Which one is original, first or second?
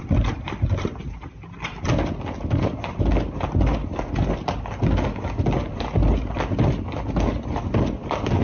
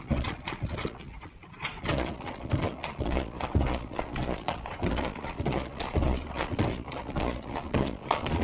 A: first